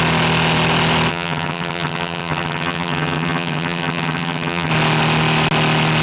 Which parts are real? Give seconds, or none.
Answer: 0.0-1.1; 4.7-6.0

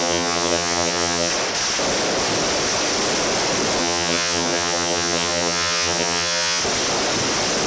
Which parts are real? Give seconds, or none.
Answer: 1.3-3.8; 6.6-7.7

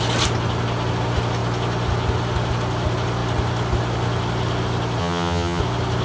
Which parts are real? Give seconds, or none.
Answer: 0.0-5.0; 5.6-6.0

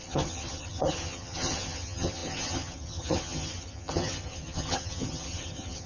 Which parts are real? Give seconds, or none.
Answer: none

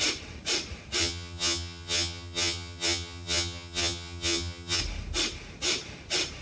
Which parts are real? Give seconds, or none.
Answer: 0.0-1.0; 4.8-6.4

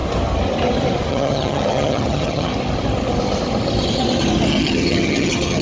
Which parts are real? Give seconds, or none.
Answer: 0.0-1.1; 2.5-4.5

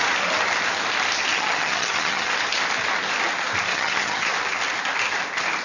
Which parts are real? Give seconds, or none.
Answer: 0.0-1.3; 2.3-3.7; 4.3-5.6

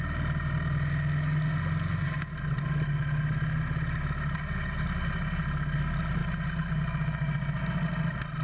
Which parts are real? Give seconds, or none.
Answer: 0.0-8.4